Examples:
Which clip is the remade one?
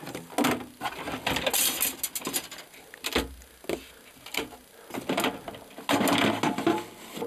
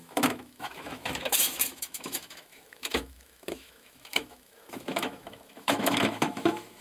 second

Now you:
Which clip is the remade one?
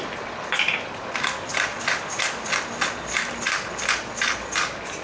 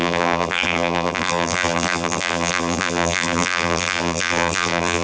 second